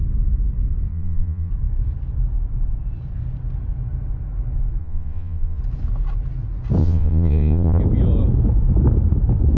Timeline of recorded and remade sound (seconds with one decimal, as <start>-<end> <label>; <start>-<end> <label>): 0.0-0.9 recorded; 0.9-1.5 remade; 1.5-4.8 recorded; 4.8-5.6 remade; 5.6-6.8 recorded; 6.8-7.8 remade; 7.8-9.6 recorded